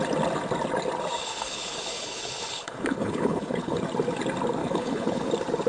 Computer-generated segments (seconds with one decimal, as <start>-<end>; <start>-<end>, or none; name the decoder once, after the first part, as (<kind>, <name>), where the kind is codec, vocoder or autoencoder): 1.2-3.8 (codec, HILCodec); 4.6-5.3